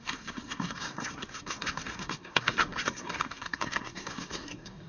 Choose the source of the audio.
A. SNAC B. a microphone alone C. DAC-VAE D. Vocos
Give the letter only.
A